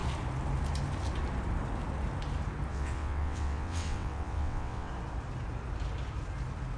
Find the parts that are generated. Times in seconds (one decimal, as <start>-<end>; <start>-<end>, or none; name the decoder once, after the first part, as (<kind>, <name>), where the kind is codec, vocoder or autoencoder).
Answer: 2.7-4.9 (vocoder, WaveNeXt)